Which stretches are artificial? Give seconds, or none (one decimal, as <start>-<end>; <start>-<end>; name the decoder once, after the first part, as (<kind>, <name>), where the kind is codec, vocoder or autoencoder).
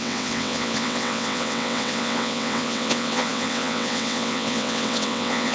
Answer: 0.0-5.5 (vocoder, WaveNeXt)